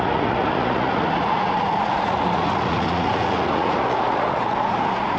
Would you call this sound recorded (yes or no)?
no